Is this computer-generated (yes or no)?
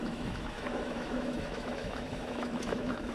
yes